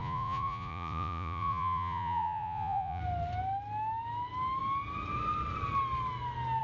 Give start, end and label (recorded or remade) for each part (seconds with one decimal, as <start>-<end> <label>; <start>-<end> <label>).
0.0-3.0 remade; 3.0-6.6 recorded